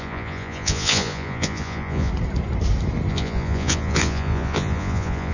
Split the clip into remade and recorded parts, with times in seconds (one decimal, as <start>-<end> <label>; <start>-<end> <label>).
0.0-2.1 remade; 2.1-3.1 recorded; 3.1-5.3 remade